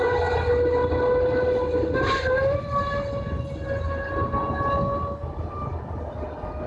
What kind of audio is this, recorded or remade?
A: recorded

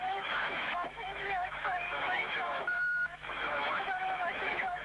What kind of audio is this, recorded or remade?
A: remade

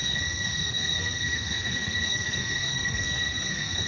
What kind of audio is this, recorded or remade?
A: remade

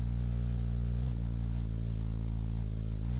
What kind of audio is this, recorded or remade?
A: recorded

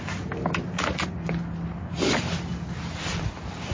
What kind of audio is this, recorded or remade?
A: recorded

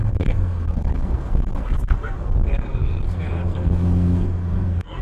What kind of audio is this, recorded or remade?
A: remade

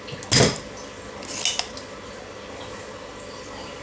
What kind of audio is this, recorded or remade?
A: recorded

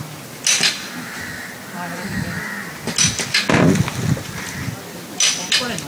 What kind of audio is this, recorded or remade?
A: recorded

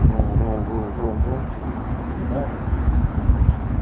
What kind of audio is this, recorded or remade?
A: remade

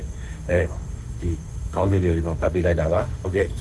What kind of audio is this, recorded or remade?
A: remade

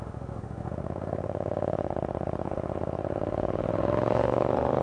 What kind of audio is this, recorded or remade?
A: remade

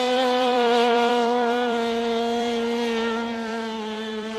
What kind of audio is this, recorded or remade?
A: remade